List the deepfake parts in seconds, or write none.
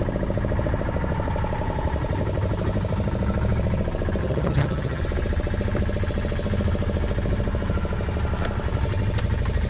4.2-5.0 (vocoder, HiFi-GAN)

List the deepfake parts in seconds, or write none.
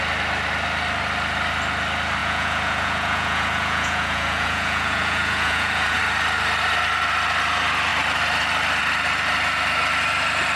2.2-6.0 (vocoder, Vocos)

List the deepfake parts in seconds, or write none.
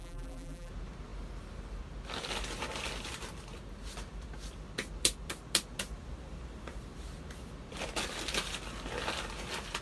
0.0-0.7 (vocoder, BigVGAN v2)